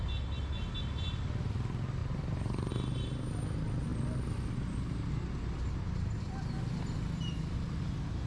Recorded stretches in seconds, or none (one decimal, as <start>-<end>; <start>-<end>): 0.0-2.0; 2.7-8.3